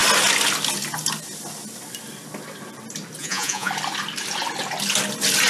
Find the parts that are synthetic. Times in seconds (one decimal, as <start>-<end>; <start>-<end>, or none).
3.2-3.7

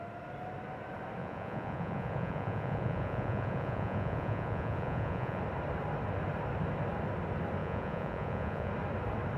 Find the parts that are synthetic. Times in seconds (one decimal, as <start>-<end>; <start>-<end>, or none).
1.2-5.4; 7.6-8.7

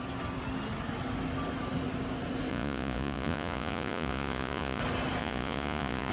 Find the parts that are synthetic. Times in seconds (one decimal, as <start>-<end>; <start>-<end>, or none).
2.5-4.8; 5.2-6.1

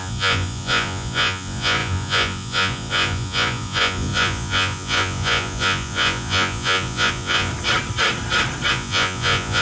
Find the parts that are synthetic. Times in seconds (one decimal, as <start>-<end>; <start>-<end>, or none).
0.0-7.5; 8.7-9.6

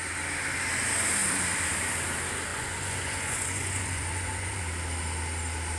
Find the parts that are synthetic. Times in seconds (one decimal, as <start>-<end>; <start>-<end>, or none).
2.5-4.6